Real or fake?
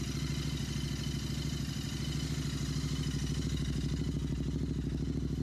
real